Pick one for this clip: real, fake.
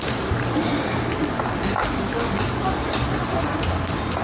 real